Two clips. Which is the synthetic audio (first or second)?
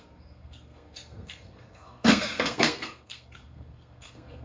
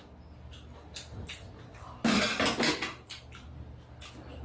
first